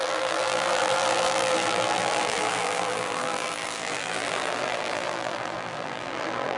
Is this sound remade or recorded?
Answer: remade